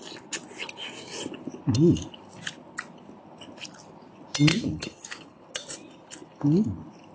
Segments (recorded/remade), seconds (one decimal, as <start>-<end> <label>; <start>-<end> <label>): 0.0-4.5 recorded; 4.5-5.4 remade; 5.4-7.1 recorded